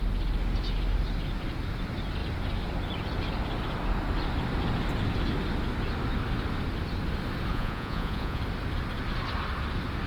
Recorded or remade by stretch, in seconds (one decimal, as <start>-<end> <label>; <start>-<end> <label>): 0.0-7.5 recorded; 7.5-8.4 remade; 8.4-10.1 recorded